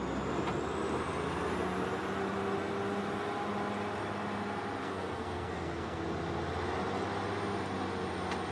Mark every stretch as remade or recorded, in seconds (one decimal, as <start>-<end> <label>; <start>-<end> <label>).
0.0-4.8 recorded; 4.8-6.0 remade; 6.0-8.5 recorded